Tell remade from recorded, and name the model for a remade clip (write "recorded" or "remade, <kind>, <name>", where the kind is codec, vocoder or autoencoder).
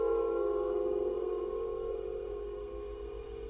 remade, codec, SNAC